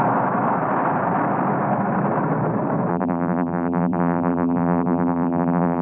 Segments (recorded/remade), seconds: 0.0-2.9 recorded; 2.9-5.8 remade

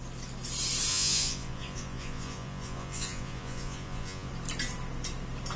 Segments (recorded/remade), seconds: 0.0-0.9 recorded; 0.9-4.3 remade; 4.3-5.6 recorded

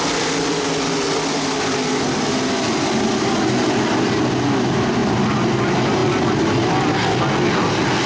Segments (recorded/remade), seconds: 0.0-8.1 recorded

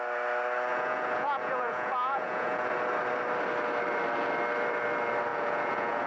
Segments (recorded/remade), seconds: 0.0-0.7 recorded; 0.7-2.7 remade; 2.7-5.3 recorded; 5.3-6.1 remade

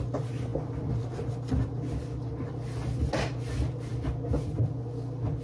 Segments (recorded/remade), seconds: 0.0-5.4 recorded

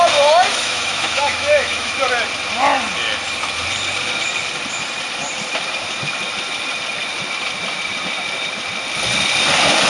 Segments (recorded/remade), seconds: 0.0-0.5 recorded; 0.5-1.9 remade; 1.9-9.9 recorded